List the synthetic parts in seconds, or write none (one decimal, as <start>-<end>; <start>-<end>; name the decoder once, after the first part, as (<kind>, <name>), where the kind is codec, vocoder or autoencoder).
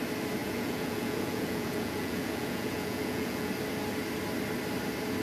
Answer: 0.4-3.5 (vocoder, Vocos)